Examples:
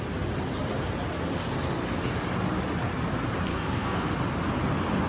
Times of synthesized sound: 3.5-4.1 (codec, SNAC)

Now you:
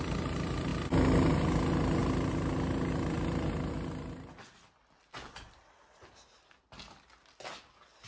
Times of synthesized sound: none

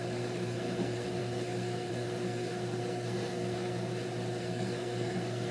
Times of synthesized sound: 0.0-3.9 (codec, SNAC); 4.4-5.5

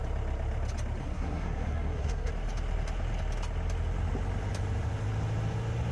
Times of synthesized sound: 1.0-2.3 (codec, SNAC)

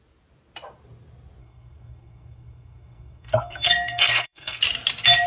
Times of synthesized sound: 1.4-4.6 (codec, SNAC)

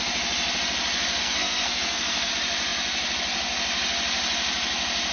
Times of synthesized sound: 1.2-2.3 (codec, SNAC)

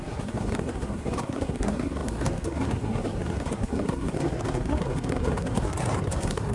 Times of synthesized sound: 0.0-6.5 (codec, SNAC)